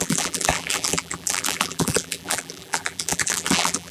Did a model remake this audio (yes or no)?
yes